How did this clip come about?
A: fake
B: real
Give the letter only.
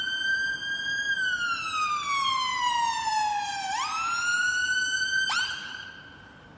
A